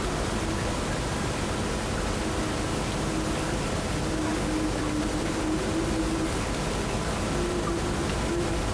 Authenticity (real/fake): real